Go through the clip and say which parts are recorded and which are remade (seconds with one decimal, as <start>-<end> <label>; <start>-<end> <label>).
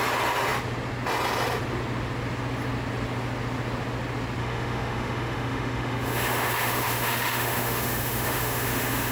0.0-4.4 recorded; 4.4-9.1 remade